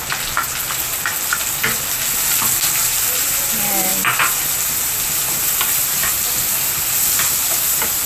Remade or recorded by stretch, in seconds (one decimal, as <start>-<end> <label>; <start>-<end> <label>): 0.0-8.1 recorded